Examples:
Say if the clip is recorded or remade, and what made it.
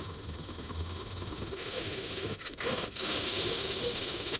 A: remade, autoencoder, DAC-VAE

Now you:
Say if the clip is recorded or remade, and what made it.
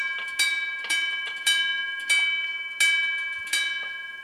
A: recorded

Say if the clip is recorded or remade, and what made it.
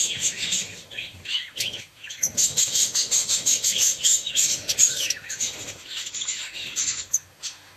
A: remade, autoencoder, DAC-VAE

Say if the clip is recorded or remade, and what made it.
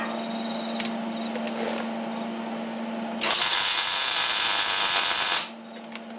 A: recorded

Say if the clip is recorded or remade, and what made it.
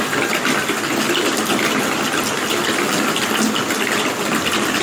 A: recorded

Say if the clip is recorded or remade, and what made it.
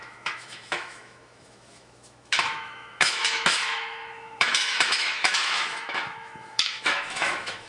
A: remade, autoencoder, DAC-VAE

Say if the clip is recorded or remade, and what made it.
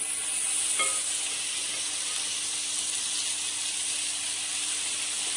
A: recorded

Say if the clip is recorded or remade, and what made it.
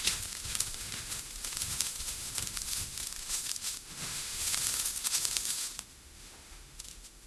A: remade, autoencoder, DAC-VAE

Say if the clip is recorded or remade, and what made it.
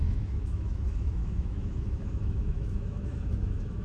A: remade, autoencoder, DAC-VAE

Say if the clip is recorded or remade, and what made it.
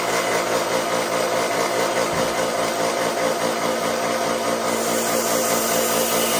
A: recorded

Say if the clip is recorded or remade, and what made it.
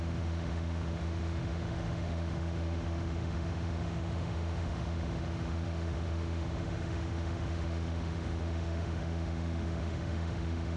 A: remade, autoencoder, DAC-VAE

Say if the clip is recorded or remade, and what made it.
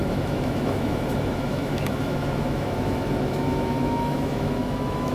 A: remade, autoencoder, DAC-VAE